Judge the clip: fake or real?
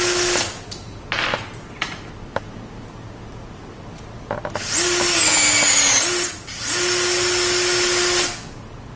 real